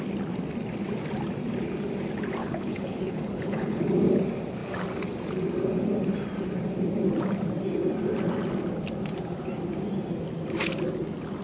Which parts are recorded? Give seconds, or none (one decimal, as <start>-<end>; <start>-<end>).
0.0-2.4; 3.8-11.4